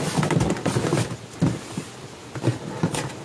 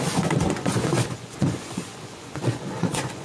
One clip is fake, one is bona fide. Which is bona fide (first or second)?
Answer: first